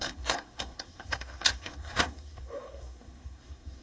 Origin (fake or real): fake